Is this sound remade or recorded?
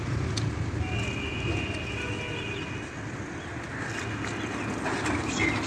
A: recorded